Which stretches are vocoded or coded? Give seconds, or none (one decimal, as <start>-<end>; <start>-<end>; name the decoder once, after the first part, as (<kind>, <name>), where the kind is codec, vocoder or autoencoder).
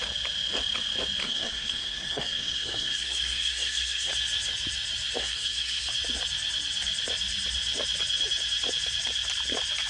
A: 1.2-4.1 (codec, SNAC); 5.2-5.9